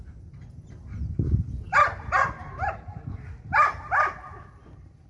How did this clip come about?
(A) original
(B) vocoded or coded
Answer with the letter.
A